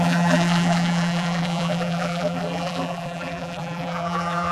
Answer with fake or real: fake